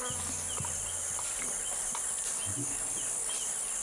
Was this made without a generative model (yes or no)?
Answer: yes